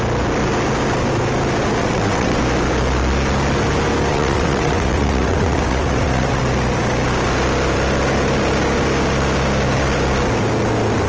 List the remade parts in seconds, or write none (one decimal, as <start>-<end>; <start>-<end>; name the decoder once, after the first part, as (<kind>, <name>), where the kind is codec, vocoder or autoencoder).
1.8-2.4 (vocoder, WaveNeXt); 4.1-6.4